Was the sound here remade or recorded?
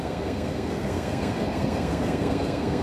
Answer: remade